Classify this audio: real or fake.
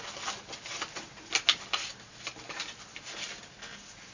real